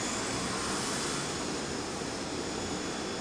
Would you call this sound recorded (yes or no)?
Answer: yes